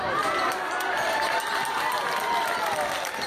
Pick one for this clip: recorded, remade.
recorded